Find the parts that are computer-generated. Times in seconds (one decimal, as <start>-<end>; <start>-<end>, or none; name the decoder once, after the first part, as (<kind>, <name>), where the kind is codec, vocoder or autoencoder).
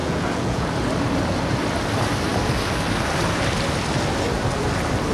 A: 0.0-0.7 (vocoder, Vocos)